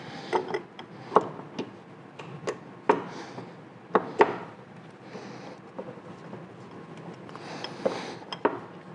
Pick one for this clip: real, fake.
real